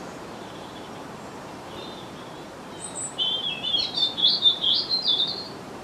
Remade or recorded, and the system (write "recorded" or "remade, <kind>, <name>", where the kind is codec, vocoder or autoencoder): remade, vocoder, BigVGAN v2